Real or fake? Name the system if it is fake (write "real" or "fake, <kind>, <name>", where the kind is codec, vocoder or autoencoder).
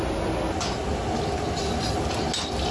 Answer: real